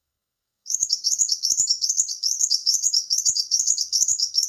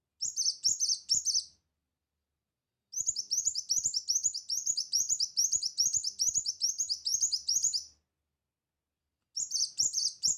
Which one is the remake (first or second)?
first